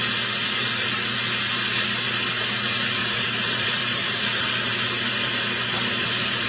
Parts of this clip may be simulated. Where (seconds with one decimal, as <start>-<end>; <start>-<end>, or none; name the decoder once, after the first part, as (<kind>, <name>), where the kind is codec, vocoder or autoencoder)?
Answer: 3.0-4.4 (vocoder, BigVGAN v2)